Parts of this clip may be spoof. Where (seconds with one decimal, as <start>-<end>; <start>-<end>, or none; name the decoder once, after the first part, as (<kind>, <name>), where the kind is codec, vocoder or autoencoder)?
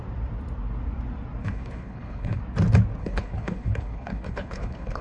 1.4-2.4 (codec, HILCodec); 3.0-5.0